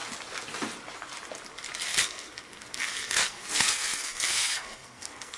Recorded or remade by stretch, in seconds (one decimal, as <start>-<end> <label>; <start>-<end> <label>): 0.0-1.9 recorded; 1.9-5.4 remade